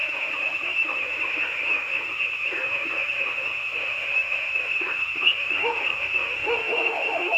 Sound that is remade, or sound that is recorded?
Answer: remade